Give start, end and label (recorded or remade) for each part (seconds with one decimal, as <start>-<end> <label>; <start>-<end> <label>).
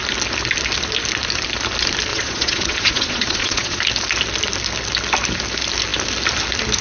0.0-2.1 recorded; 2.1-3.8 remade; 3.8-6.8 recorded